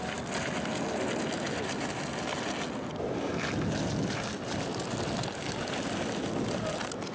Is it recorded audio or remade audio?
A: recorded